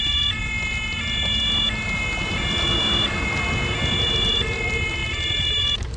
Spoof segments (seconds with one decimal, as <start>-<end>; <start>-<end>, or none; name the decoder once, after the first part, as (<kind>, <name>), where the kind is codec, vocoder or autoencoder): 0.0-0.4 (vocoder, BigVGAN v2); 4.0-6.0